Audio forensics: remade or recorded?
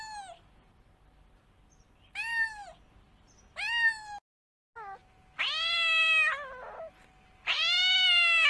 recorded